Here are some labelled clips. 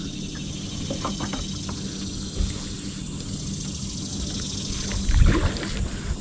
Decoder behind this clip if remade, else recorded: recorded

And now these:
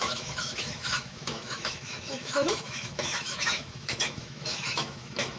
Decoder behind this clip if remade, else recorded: remade, autoencoder, DAC-VAE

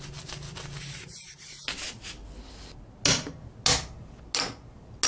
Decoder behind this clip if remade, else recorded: recorded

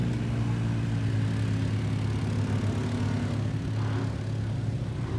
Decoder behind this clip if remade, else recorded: recorded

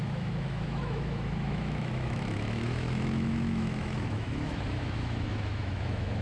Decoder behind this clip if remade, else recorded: remade, autoencoder, DAC-VAE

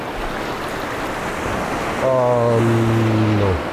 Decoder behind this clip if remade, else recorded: recorded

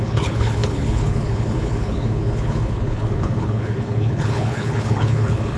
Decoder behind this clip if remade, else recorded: remade, codec, HILCodec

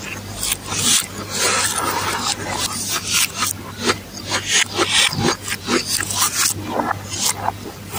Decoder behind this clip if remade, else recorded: recorded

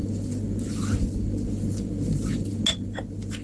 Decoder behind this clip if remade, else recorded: recorded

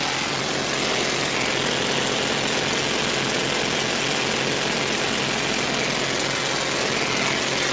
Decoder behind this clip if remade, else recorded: recorded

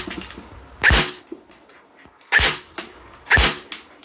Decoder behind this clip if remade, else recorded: recorded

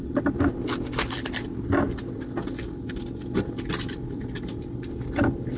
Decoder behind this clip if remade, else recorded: recorded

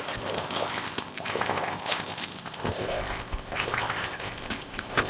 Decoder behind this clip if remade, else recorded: remade, codec, ZipCodec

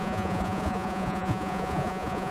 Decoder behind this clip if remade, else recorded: remade, vocoder, Vocos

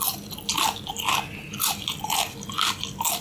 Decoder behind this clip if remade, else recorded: recorded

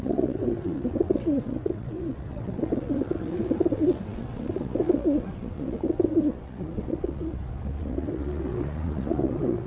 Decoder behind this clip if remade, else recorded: remade, vocoder, WaveNeXt